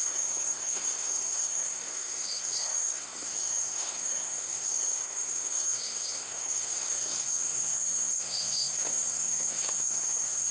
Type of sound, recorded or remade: remade